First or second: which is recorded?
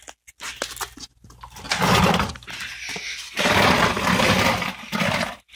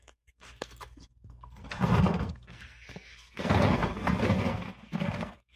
first